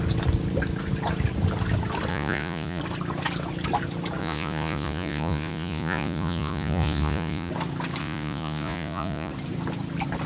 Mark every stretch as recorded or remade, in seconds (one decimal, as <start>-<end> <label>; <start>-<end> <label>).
0.0-2.1 recorded; 2.1-2.8 remade; 2.8-4.2 recorded; 4.2-7.5 remade; 7.5-8.0 recorded; 8.0-9.3 remade; 9.3-10.3 recorded